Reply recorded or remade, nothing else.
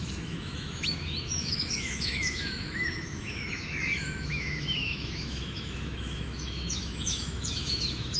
remade